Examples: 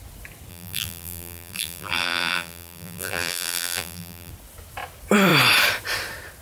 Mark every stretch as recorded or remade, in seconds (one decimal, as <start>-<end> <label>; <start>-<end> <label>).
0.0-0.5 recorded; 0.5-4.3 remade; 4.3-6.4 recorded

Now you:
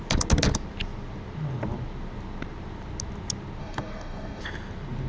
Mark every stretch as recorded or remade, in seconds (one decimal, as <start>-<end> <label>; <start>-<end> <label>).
0.0-3.6 recorded; 3.6-4.4 remade; 4.4-5.1 recorded

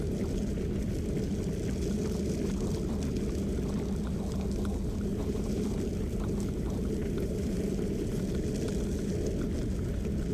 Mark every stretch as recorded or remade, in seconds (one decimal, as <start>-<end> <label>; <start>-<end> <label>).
0.0-5.1 recorded; 5.1-5.6 remade; 5.6-7.0 recorded; 7.0-7.5 remade; 7.5-10.3 recorded

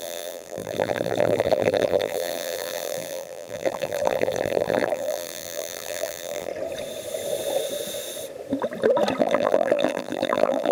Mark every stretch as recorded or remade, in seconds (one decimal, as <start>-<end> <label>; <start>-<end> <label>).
0.0-6.5 remade; 6.5-9.2 recorded; 9.2-10.7 remade